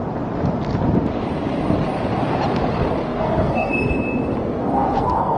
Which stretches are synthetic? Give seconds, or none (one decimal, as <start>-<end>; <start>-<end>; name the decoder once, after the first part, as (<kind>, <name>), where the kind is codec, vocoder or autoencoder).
3.0-3.7 (codec, SNAC); 4.4-5.4